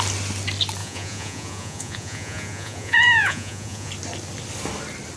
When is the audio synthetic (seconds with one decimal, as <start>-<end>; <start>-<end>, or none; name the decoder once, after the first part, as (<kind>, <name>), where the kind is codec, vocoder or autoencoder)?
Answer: 0.8-3.9 (vocoder, Vocos)